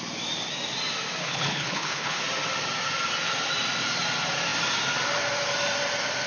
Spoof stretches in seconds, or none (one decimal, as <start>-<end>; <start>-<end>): 1.2-2.2